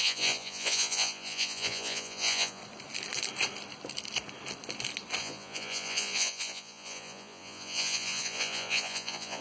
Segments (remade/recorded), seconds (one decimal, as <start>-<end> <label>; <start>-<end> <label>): 0.0-2.6 remade; 2.6-5.2 recorded; 5.2-9.4 remade